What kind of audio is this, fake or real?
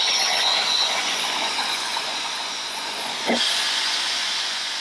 fake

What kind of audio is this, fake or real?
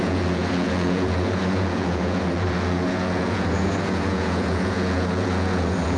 fake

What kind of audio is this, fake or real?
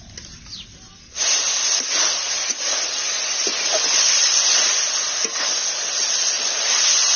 real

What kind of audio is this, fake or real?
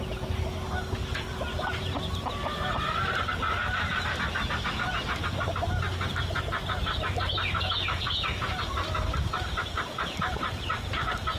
real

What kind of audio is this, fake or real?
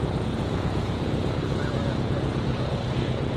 fake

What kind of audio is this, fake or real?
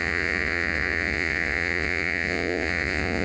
fake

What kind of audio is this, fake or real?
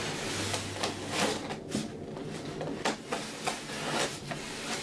real